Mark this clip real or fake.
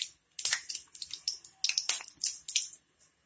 real